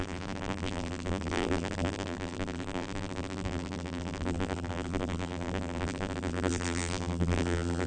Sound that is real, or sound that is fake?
fake